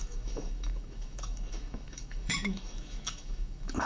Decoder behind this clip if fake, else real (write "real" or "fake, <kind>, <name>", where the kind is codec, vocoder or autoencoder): fake, autoencoder, DAC-VAE